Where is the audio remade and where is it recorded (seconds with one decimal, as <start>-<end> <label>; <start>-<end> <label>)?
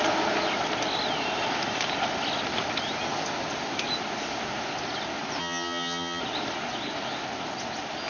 0.0-5.4 recorded; 5.4-6.2 remade; 6.2-8.1 recorded